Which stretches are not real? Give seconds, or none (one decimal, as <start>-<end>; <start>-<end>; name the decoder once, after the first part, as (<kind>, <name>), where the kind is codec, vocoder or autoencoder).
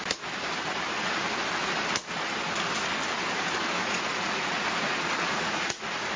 3.8-5.8 (vocoder, Vocos)